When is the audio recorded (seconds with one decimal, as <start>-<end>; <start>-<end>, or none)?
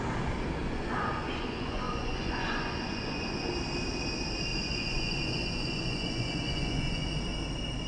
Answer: 0.0-0.6; 3.5-4.5; 7.1-7.9